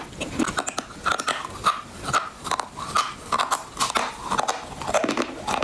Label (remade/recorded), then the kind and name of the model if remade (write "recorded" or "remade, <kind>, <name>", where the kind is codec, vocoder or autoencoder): recorded